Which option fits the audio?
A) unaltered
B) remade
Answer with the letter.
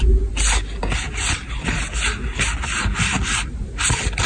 A